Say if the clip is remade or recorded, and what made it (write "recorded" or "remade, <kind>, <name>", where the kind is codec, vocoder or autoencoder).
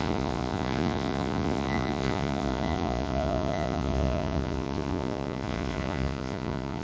remade, vocoder, Vocos